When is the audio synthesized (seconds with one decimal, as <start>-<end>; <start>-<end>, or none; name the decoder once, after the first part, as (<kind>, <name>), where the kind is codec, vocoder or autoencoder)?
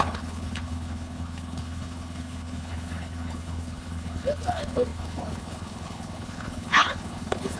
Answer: 0.0-7.6 (codec, HILCodec)